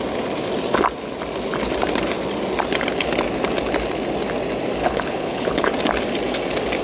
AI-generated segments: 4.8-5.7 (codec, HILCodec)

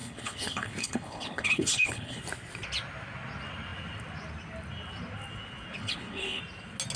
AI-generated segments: 0.0-2.2 (codec, HILCodec); 5.8-6.4

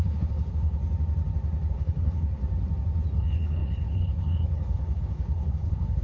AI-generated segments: 0.0-0.8 (codec, HILCodec); 1.7-2.4; 3.1-6.0

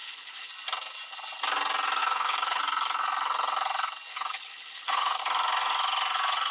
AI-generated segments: 0.0-0.5 (codec, HILCodec); 2.0-2.6; 4.1-5.2

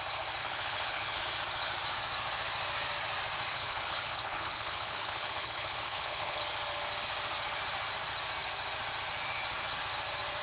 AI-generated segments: 0.4-1.2 (codec, HILCodec); 3.5-6.4

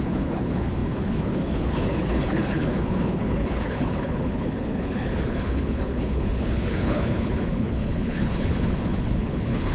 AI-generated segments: 0.0-9.7 (codec, HILCodec)

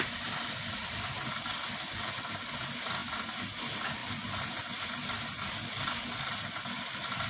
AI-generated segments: none

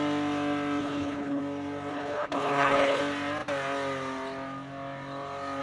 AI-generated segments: 0.8-1.4 (codec, HILCodec); 1.9-3.0